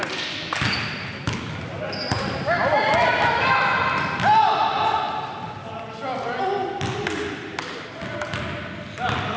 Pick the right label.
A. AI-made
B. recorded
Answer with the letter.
B